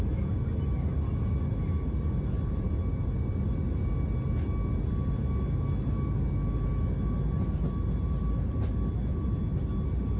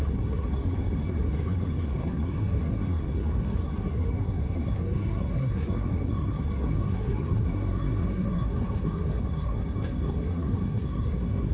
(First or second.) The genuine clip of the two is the first